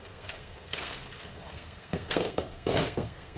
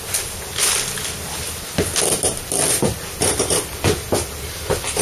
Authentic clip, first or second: second